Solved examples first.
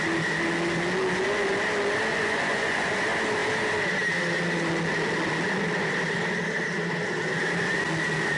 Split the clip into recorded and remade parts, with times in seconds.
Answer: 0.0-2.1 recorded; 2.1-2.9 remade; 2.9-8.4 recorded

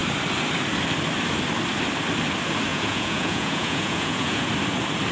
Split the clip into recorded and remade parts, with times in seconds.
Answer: 0.0-2.7 recorded; 2.7-4.5 remade; 4.5-5.1 recorded

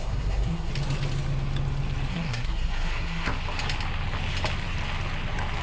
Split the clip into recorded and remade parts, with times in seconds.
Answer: 0.0-0.7 remade; 0.7-2.1 recorded; 2.1-3.3 remade; 3.3-5.6 recorded

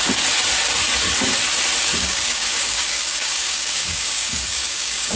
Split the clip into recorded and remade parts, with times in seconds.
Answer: 0.0-2.0 recorded; 2.0-5.2 remade

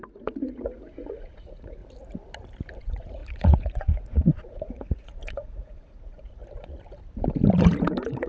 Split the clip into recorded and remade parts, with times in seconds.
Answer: 0.0-1.8 remade; 1.8-2.8 recorded; 2.8-6.4 remade; 6.4-7.6 recorded; 7.6-8.3 remade

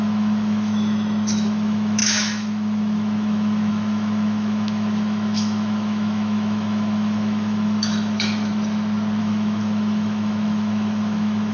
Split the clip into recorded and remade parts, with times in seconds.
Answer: 0.0-8.5 remade; 8.5-9.2 recorded; 9.2-11.5 remade